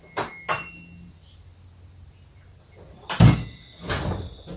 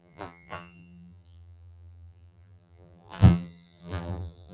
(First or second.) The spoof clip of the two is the second